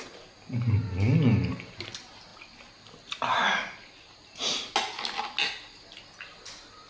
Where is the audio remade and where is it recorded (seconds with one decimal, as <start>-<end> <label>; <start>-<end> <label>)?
0.0-6.9 recorded